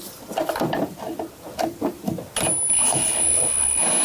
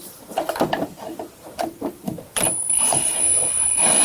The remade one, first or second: second